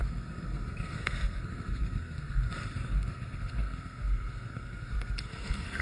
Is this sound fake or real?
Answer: fake